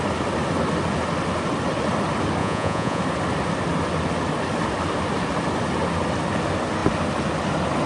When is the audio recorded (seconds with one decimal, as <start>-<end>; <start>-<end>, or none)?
0.0-2.4; 3.0-7.9